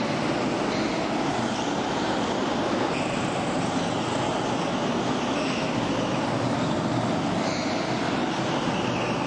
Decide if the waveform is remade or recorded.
recorded